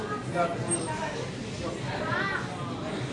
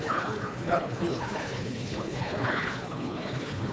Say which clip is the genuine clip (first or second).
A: first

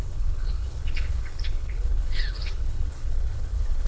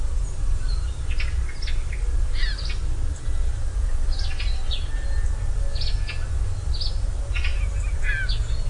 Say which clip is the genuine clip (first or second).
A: second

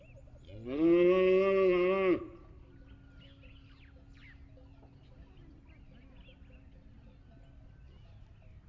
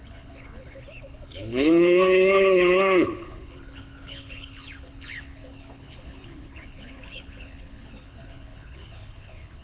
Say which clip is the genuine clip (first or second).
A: first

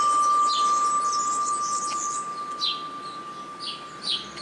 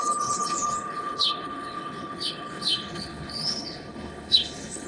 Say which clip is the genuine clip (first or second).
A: first